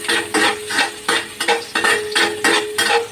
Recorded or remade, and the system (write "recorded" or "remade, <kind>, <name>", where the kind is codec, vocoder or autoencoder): recorded